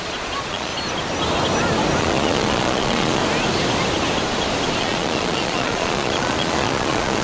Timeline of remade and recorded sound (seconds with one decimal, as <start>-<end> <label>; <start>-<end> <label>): 0.0-0.7 remade; 0.7-2.0 recorded; 2.0-3.2 remade; 3.2-4.8 recorded; 4.8-7.2 remade